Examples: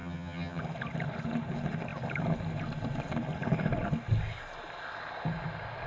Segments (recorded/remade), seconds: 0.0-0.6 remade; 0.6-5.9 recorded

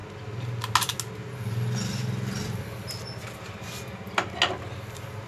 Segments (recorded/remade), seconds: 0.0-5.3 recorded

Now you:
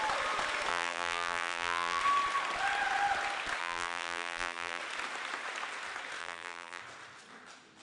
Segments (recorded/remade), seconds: 0.0-0.7 recorded; 0.7-2.0 remade; 2.0-3.6 recorded; 3.6-4.8 remade; 4.8-6.2 recorded; 6.2-6.8 remade; 6.8-7.8 recorded

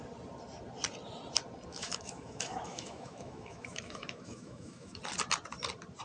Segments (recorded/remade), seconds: 0.0-1.7 recorded; 1.7-5.0 remade; 5.0-6.0 recorded

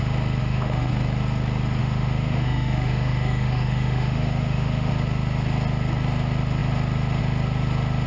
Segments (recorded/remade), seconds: 0.0-0.4 recorded; 0.4-0.9 remade; 0.9-1.8 recorded; 1.8-4.9 remade; 4.9-8.1 recorded

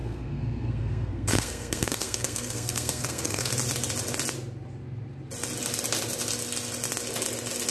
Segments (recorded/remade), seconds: 0.0-3.5 remade; 3.5-7.7 recorded

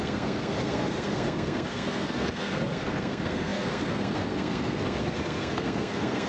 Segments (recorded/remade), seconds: 0.0-6.3 remade